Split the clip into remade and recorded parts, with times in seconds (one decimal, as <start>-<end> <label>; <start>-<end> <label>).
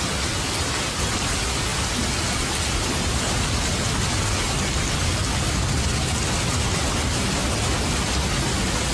0.0-8.9 recorded